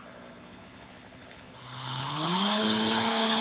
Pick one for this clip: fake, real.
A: fake